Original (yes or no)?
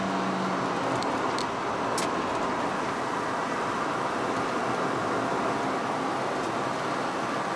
yes